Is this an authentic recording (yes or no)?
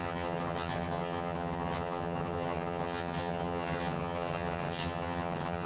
no